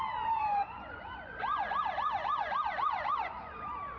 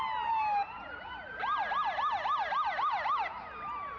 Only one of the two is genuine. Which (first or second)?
second